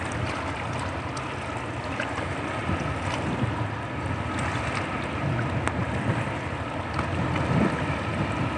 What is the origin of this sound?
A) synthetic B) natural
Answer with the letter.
B